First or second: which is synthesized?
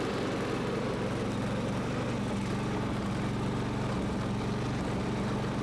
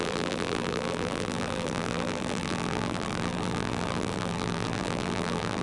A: second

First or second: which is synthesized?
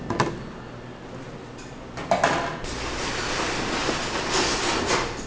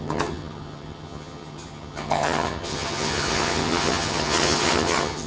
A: second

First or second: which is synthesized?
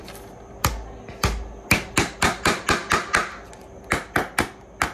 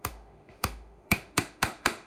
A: second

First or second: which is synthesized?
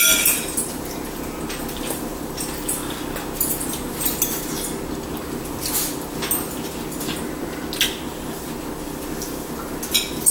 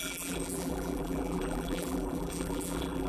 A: second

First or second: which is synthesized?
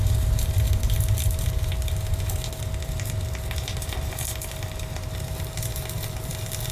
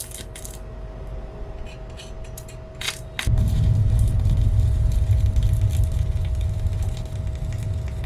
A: first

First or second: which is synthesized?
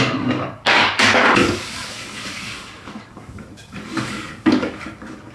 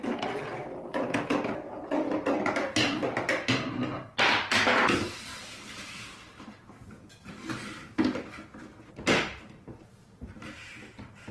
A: first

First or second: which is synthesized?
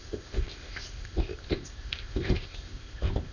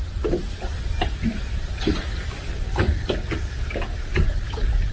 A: first